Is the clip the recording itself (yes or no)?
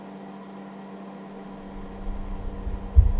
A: yes